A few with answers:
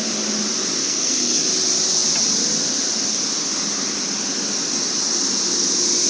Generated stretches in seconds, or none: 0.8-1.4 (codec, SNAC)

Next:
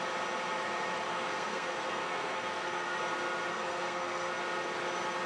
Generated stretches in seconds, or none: 1.1-3.0 (codec, SNAC); 3.5-4.3

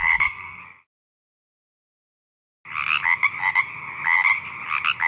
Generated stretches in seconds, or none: 0.0-0.6 (codec, SNAC)

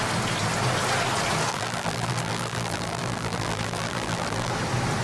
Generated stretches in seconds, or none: 1.5-4.5 (vocoder, BigVGAN v2)

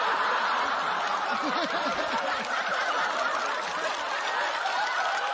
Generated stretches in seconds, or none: none